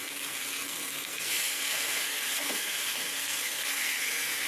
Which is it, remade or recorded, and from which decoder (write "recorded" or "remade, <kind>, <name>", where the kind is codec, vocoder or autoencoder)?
remade, codec, SNAC